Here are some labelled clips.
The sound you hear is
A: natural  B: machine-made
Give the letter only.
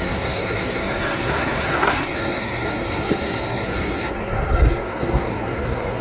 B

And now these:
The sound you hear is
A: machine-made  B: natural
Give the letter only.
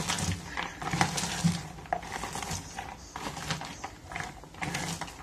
B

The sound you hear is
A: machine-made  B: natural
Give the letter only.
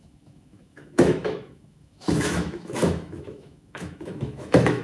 A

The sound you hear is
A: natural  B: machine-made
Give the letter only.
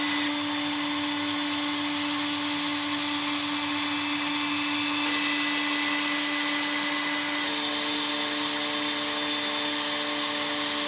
A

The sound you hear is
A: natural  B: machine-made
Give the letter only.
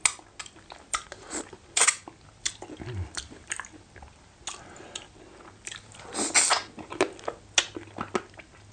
A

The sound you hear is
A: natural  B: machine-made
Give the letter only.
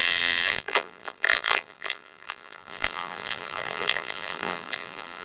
B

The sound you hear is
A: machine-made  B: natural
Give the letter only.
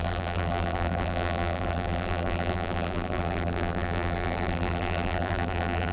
A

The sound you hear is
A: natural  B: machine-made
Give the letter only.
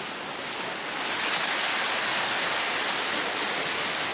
A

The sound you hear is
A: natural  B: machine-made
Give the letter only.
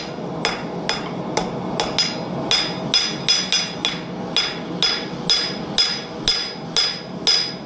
A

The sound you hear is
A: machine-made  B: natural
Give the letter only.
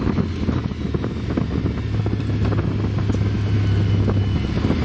B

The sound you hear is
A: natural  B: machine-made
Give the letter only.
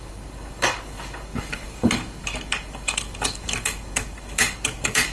B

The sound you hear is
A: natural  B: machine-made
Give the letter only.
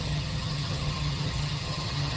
B